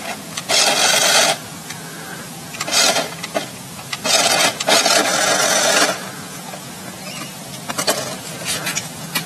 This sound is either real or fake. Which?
fake